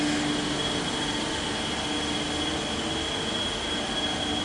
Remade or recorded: recorded